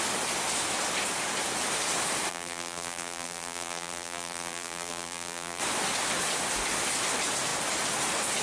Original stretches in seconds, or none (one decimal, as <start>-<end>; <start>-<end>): 0.0-2.3; 5.6-8.4

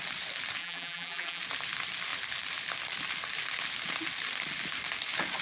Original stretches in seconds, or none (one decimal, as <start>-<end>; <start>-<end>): 0.0-0.6; 1.4-5.4

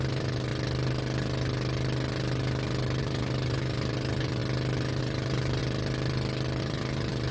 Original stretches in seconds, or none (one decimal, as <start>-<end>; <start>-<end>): 0.5-3.0; 4.4-5.0; 5.6-6.6

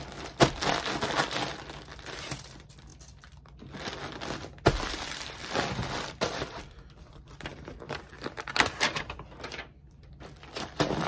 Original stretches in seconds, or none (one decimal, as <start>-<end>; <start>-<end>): 0.7-2.3; 2.9-4.7

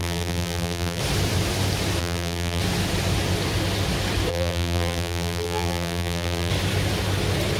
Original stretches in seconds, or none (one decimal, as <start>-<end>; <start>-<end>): 1.0-2.0; 2.6-4.3; 6.5-7.6

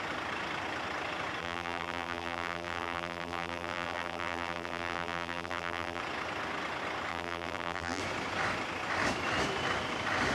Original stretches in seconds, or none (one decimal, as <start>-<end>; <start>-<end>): 0.0-1.4; 6.0-7.1; 8.0-10.3

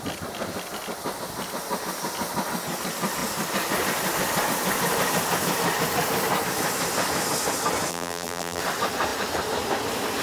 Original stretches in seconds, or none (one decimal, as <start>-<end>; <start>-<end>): 0.0-7.9; 8.6-10.2

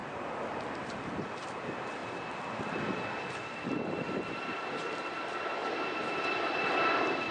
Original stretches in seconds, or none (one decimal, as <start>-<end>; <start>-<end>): none